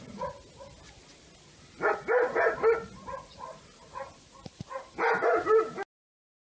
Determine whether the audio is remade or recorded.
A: recorded